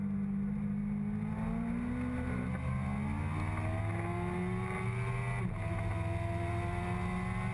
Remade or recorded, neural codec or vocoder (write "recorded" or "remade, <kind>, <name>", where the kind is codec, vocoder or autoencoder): recorded